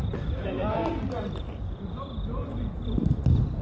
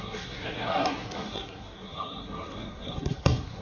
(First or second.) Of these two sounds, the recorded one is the first